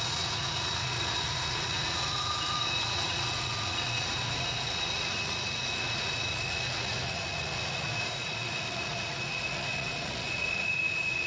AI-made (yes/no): yes